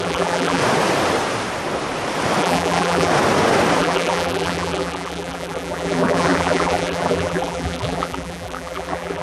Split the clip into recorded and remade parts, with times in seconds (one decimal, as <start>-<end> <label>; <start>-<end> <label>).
0.0-0.6 remade; 0.6-2.4 recorded; 2.4-3.1 remade; 3.1-3.8 recorded; 3.8-9.2 remade